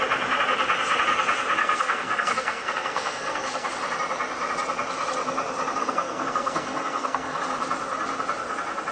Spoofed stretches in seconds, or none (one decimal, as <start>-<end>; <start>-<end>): 1.6-3.7; 5.8-7.4